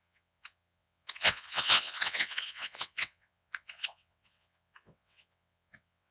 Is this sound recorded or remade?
remade